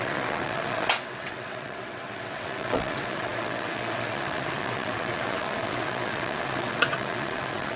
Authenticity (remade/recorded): remade